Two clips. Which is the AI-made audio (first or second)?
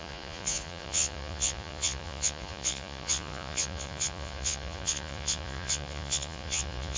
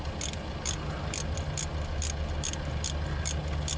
first